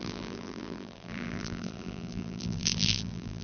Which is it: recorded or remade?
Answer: remade